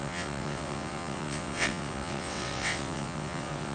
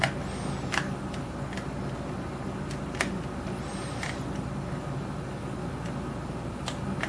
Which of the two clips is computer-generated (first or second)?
first